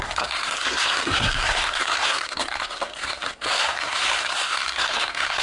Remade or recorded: remade